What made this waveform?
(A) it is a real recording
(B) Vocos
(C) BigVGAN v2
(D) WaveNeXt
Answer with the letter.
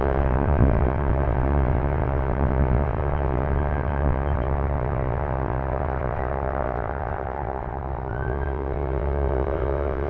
D